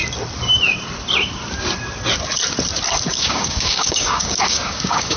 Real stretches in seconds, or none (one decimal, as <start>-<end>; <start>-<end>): 0.0-3.1